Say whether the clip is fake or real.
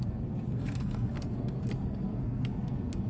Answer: fake